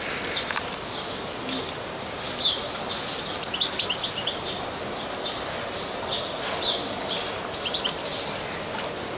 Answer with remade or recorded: recorded